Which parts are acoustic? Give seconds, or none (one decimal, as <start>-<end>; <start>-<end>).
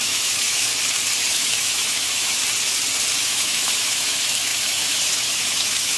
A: 0.7-1.3; 2.4-3.2